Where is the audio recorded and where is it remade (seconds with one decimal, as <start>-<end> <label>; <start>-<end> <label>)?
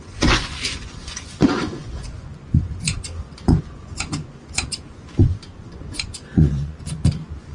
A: 0.0-7.5 remade